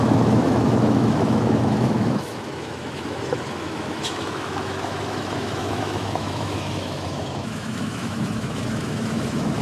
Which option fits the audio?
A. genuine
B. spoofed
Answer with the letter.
B